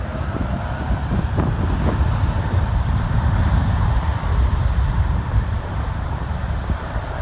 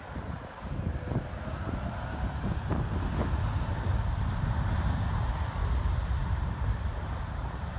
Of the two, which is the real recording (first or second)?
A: second